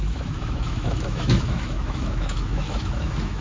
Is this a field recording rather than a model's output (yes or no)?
no